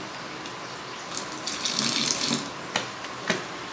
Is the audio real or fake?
real